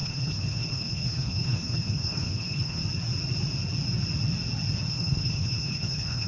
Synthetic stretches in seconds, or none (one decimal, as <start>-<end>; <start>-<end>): 0.0-2.8; 4.9-6.3